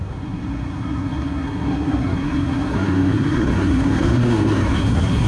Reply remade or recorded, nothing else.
remade